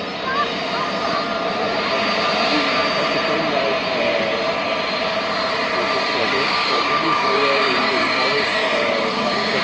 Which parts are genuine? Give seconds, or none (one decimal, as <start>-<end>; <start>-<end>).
0.0-6.2